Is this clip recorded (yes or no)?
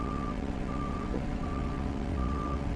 no